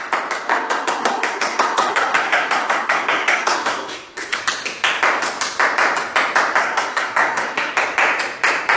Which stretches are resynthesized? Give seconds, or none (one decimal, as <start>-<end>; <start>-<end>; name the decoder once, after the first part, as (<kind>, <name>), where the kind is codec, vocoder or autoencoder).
0.5-4.4 (codec, SNAC); 6.6-7.7